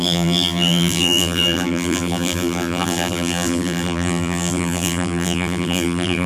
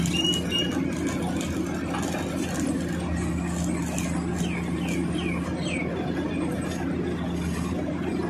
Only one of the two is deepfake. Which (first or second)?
first